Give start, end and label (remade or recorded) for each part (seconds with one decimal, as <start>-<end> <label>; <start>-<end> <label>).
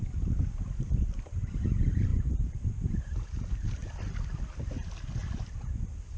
0.0-6.2 recorded